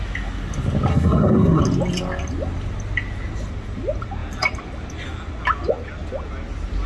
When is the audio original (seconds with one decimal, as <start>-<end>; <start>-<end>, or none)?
0.0-0.9; 1.6-6.9